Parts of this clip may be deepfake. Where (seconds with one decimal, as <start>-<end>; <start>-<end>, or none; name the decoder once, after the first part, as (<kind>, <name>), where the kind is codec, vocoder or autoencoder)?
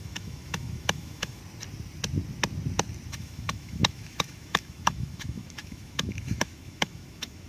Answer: 0.0-1.4 (autoencoder, DAC-VAE); 3.1-7.5